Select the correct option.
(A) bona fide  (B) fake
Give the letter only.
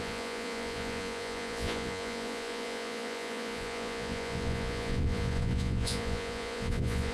B